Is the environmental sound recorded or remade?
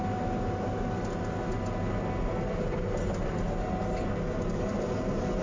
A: recorded